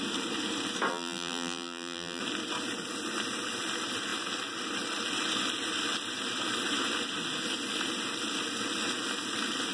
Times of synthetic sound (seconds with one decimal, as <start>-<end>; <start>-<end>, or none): 0.9-2.2